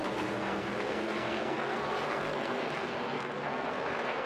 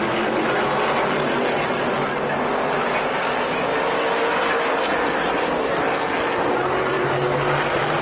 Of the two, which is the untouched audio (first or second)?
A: second